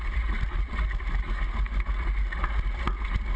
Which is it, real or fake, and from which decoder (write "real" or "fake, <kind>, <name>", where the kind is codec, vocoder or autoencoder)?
real